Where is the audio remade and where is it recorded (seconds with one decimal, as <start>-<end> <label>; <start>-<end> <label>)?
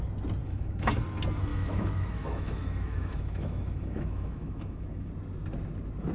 0.0-0.4 recorded; 0.4-1.0 remade; 1.0-1.5 recorded; 1.5-5.1 remade; 5.1-6.1 recorded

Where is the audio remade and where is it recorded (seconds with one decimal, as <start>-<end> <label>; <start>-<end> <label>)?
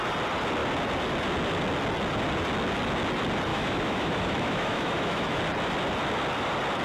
0.0-3.5 recorded; 3.5-5.4 remade; 5.4-6.8 recorded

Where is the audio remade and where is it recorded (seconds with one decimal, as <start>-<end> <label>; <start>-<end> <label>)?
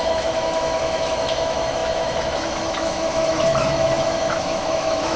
0.0-5.2 remade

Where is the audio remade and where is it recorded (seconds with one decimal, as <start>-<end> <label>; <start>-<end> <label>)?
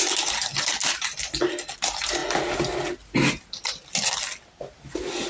0.0-5.3 recorded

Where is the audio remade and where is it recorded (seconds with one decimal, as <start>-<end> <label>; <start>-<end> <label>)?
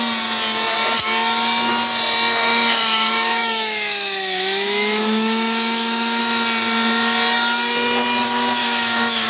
0.0-2.4 recorded; 2.4-6.2 remade; 6.2-8.6 recorded; 8.6-9.3 remade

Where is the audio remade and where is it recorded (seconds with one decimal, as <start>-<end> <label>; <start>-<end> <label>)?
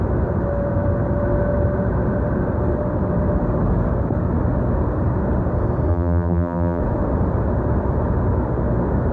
0.0-5.9 recorded; 5.9-6.8 remade; 6.8-9.1 recorded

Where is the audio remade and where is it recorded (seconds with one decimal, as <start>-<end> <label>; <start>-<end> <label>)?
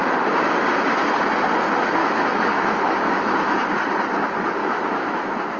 0.0-2.0 recorded; 2.0-3.7 remade; 3.7-4.6 recorded; 4.6-5.6 remade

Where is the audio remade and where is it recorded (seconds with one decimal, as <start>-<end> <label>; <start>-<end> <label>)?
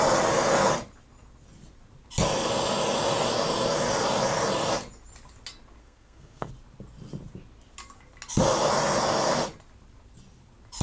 0.0-5.8 recorded; 5.8-6.5 remade; 6.5-10.8 recorded